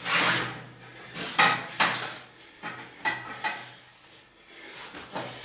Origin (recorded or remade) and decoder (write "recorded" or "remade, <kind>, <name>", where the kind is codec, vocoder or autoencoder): recorded